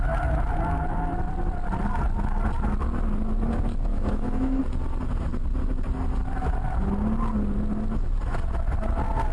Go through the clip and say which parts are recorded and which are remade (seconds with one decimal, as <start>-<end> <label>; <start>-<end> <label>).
0.0-3.9 recorded; 3.9-4.6 remade; 4.6-9.3 recorded